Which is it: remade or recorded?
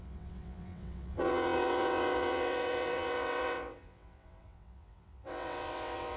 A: remade